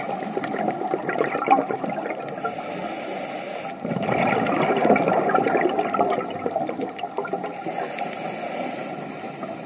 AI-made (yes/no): no